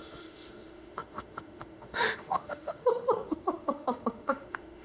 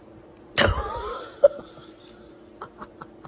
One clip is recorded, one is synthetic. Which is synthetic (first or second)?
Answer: first